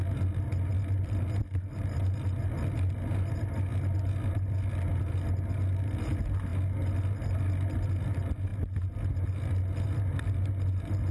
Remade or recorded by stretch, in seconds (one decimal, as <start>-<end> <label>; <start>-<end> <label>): 0.0-11.1 recorded